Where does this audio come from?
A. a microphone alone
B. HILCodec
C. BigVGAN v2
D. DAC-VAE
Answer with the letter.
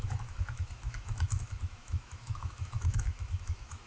D